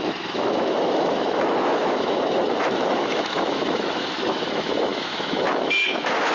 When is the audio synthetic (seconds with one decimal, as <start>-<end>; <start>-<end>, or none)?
0.0-6.3